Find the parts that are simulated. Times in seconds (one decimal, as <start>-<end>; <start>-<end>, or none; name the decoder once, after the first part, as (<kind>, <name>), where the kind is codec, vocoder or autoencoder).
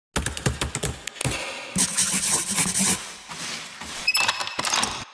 none